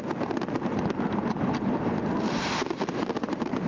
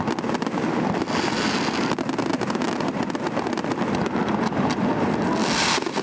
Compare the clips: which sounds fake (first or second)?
first